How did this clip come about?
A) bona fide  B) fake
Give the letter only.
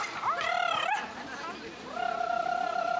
A